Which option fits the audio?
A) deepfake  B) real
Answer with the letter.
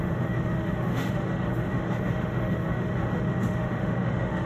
A